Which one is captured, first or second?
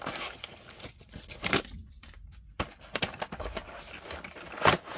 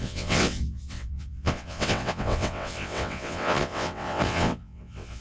first